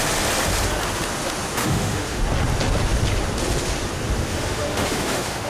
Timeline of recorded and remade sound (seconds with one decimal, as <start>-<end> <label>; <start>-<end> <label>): 0.0-1.6 recorded; 1.6-2.2 remade; 2.2-4.3 recorded; 4.3-5.5 remade